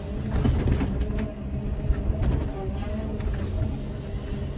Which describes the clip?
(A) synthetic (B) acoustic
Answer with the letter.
B